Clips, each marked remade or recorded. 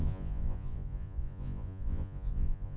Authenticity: remade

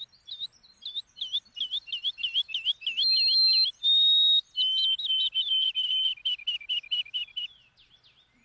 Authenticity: recorded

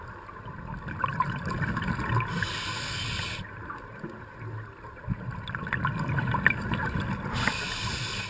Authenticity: recorded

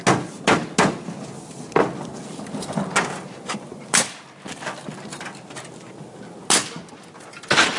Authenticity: recorded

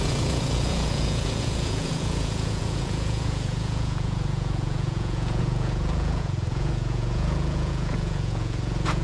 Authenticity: remade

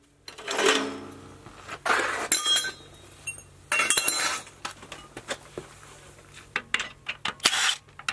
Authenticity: recorded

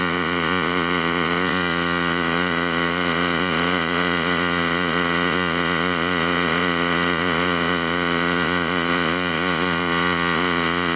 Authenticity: remade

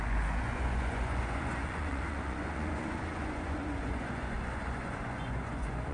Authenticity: remade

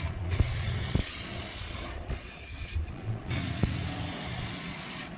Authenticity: remade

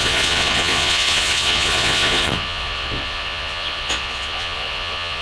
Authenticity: remade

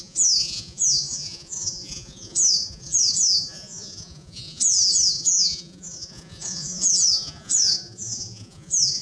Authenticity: remade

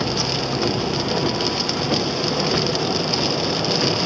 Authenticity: recorded